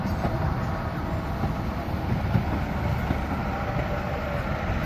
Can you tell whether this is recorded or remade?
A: recorded